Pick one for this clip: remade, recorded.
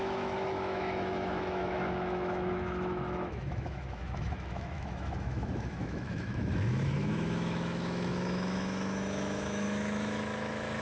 remade